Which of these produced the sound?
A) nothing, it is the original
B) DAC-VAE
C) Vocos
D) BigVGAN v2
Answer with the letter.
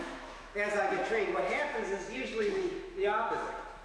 B